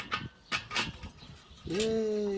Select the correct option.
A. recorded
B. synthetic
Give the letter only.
A